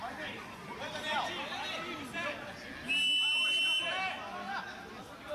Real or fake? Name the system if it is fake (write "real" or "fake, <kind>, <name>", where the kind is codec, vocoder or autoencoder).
real